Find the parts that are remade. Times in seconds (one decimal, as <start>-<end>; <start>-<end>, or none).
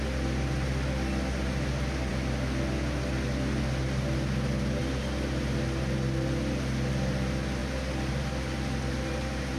none